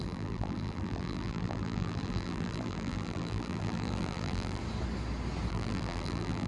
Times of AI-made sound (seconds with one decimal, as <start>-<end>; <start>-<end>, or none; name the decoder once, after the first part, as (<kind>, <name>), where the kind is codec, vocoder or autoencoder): 0.0-4.6 (vocoder, BigVGAN v2); 5.5-6.5

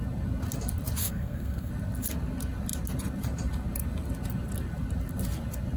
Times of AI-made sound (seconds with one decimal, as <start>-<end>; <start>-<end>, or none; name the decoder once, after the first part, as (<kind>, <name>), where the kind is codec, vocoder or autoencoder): 1.0-1.7 (codec, SNAC)

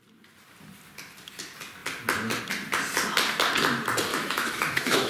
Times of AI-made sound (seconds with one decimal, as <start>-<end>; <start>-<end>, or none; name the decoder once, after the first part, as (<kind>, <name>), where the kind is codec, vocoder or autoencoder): 4.1-5.1 (autoencoder, DAC-VAE)

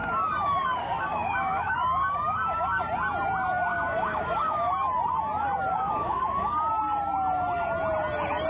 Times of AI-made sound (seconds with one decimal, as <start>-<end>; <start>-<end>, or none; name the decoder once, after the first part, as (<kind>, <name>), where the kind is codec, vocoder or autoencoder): 0.0-2.8 (codec, DAC); 3.7-4.7; 5.7-6.7

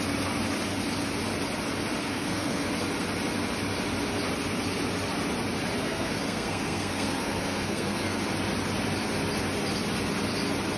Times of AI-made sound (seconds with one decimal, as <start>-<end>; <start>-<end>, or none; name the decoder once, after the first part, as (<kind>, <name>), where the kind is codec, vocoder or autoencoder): 2.0-2.7 (codec, SNAC); 5.8-8.2

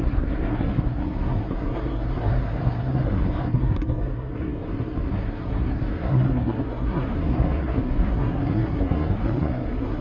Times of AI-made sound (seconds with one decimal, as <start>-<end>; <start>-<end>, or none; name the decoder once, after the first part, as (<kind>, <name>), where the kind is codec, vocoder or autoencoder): 0.0-10.0 (codec, SNAC)

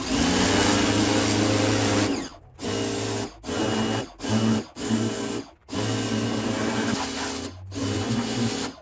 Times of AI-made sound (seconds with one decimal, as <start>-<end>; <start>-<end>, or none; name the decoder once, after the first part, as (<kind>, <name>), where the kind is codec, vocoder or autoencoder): none

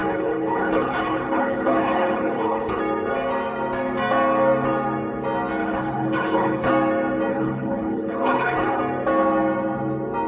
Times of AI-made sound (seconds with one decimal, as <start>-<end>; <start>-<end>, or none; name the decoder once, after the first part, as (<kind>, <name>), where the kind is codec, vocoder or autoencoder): 0.0-2.8 (codec, HILCodec); 5.6-6.7; 7.3-8.8